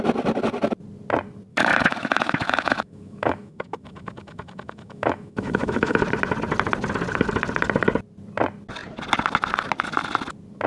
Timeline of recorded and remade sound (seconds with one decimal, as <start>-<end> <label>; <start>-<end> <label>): 0.0-1.5 recorded; 1.5-6.0 remade; 6.0-10.7 recorded